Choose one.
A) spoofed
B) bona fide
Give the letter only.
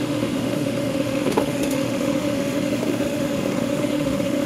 A